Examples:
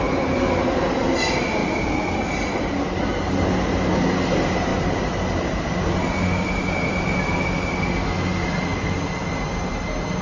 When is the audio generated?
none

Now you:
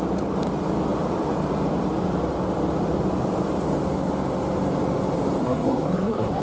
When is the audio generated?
5.4-6.4 (codec, SNAC)

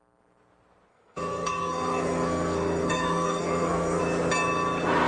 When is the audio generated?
0.9-4.0 (codec, SNAC)

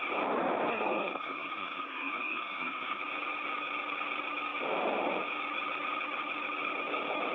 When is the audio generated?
0.7-3.0 (codec, SNAC)

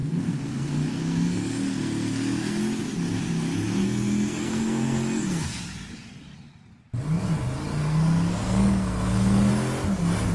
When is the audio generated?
0.0-2.6 (codec, SNAC); 3.8-5.6; 7.8-9.5

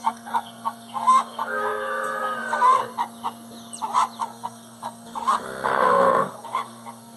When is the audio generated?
0.0-2.8 (codec, SNAC); 4.2-7.2

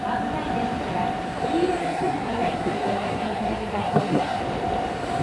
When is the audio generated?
1.8-4.4 (codec, SNAC)